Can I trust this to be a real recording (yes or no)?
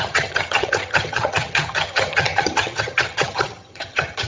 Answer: no